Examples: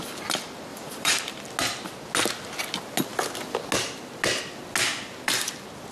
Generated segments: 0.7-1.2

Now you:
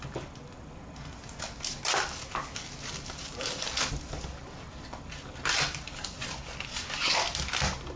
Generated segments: none